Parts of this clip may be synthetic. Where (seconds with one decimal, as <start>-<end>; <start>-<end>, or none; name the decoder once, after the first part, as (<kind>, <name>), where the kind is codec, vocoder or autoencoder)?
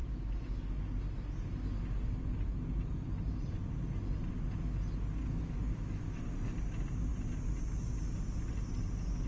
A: 5.2-6.2 (autoencoder, DAC-VAE)